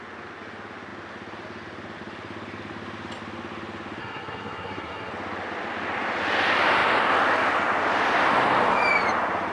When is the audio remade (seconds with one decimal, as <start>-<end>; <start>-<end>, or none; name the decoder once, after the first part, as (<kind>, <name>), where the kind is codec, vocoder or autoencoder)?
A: 4.0-5.1 (codec, SNAC)